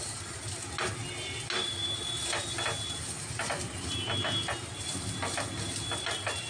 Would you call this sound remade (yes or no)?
no